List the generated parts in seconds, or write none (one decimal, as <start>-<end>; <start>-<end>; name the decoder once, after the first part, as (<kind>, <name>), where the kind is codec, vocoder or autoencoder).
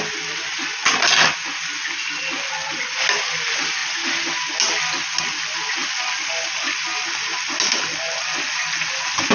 none